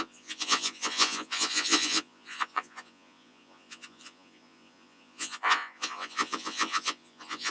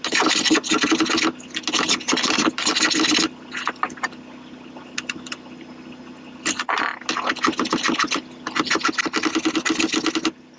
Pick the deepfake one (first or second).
first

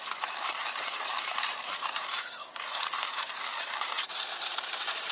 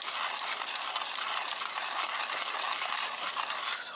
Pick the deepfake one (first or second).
first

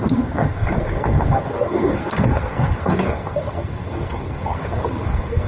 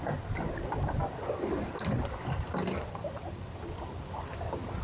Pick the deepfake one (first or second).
first